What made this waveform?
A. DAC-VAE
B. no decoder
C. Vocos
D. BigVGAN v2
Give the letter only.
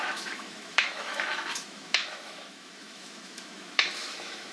A